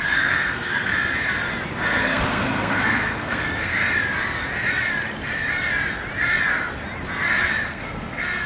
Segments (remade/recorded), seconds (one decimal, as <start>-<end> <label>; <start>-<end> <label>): 0.0-0.9 remade; 0.9-2.0 recorded; 2.0-3.7 remade; 3.7-7.7 recorded; 7.7-8.5 remade